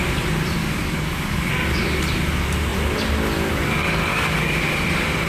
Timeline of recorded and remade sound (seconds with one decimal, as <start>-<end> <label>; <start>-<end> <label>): 0.0-0.6 recorded; 0.6-2.0 remade; 2.0-4.1 recorded; 4.1-4.6 remade; 4.6-5.3 recorded